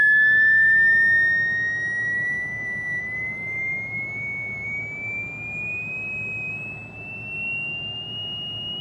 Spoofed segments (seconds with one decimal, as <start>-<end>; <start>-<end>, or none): none